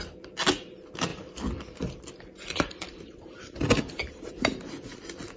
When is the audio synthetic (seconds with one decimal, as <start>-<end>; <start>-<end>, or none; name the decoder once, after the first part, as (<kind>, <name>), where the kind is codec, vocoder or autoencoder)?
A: 1.1-4.3 (vocoder, BigVGAN v2)